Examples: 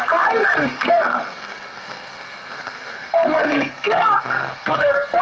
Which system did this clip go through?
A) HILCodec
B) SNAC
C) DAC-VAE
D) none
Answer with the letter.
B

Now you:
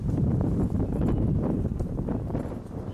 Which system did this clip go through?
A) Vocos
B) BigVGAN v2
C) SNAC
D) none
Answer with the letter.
B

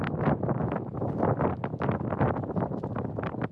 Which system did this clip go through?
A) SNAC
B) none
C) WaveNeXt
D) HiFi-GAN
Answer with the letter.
B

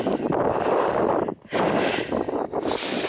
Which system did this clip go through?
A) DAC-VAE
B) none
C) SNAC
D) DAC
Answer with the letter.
B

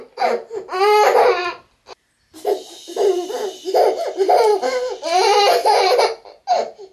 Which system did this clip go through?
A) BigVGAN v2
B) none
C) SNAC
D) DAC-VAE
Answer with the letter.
B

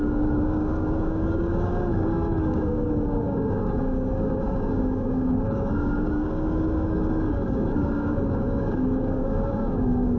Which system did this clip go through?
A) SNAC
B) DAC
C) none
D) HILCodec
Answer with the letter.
B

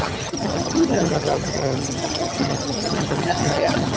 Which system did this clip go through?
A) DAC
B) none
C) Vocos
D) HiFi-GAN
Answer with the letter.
D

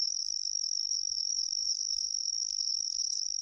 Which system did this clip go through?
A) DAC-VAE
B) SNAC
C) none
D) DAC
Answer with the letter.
D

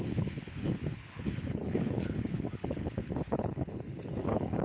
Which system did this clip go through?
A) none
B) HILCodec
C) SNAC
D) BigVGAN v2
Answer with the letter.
B